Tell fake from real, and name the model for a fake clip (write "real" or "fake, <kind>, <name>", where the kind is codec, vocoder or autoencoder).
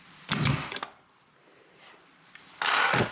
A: fake, vocoder, BigVGAN v2